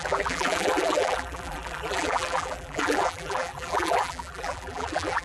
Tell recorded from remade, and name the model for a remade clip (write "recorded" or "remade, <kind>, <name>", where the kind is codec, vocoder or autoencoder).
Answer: remade, vocoder, BigVGAN v2